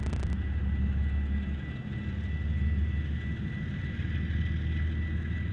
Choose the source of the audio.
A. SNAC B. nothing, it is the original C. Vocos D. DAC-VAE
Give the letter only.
B